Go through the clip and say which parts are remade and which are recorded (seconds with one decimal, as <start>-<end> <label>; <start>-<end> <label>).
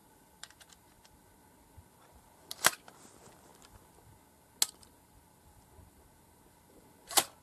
0.0-0.5 remade; 0.5-7.4 recorded